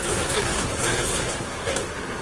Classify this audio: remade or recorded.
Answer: remade